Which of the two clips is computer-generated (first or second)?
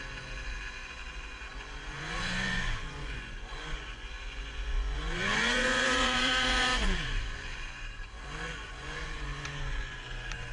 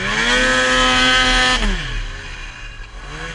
first